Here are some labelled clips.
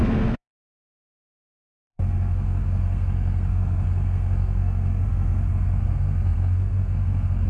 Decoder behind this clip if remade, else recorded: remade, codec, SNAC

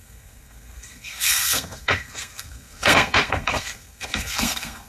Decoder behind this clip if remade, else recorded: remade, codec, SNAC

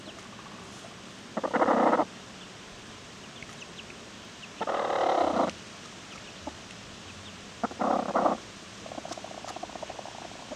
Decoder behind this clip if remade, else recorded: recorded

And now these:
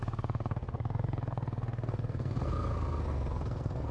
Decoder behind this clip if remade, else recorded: remade, codec, SNAC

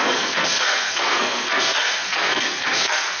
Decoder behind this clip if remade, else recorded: remade, codec, SNAC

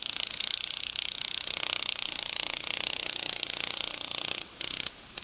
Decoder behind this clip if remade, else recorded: recorded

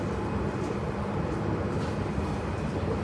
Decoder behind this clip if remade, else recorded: recorded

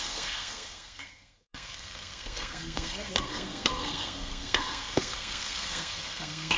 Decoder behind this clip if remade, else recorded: remade, codec, SNAC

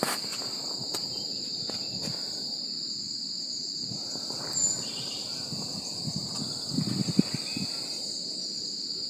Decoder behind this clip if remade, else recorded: recorded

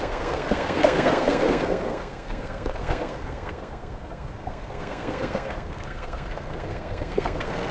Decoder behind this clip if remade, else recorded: remade, codec, SNAC